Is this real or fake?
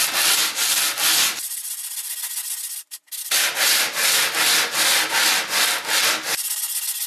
real